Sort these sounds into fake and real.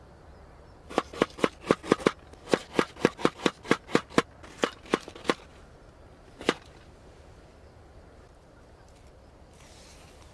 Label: fake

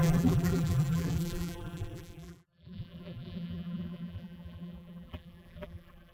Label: fake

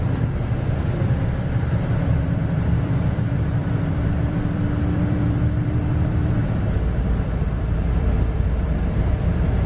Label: fake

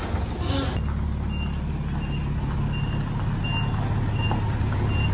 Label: real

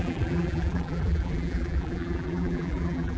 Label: fake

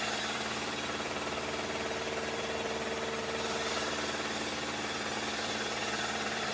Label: fake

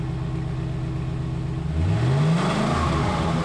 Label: real